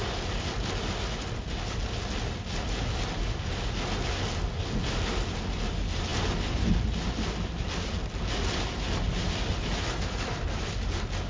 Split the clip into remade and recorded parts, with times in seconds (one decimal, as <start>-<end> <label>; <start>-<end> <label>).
0.0-11.3 recorded